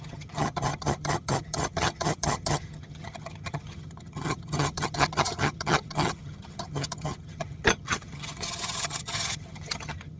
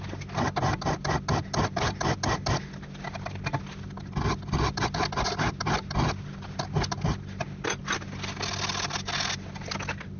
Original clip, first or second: second